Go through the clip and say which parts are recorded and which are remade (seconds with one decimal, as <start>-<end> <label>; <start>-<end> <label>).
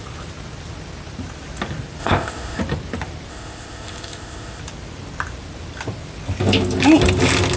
0.0-2.0 recorded; 2.0-2.6 remade; 2.6-3.3 recorded; 3.3-4.6 remade; 4.6-7.6 recorded